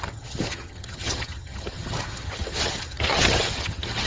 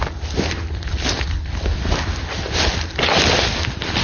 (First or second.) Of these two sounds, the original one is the second